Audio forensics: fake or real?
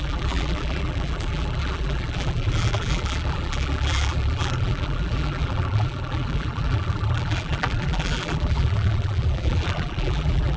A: fake